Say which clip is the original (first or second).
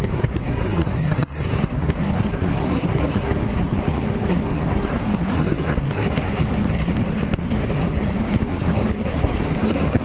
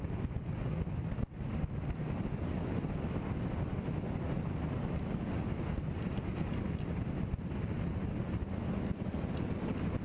second